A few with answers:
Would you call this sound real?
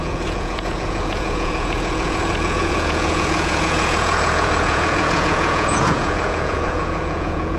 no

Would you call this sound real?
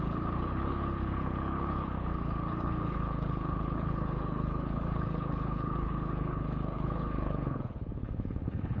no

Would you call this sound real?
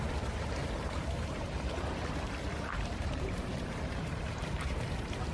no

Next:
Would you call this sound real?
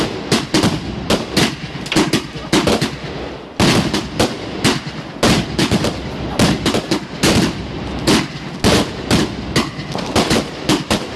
yes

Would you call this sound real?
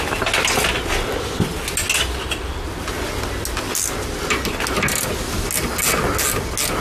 yes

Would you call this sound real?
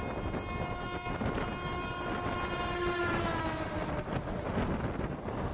yes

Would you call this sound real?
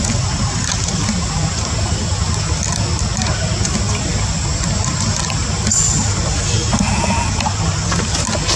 yes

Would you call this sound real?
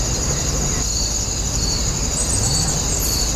yes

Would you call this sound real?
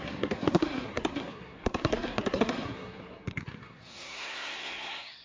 no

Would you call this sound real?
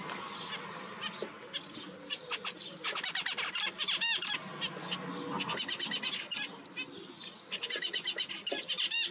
yes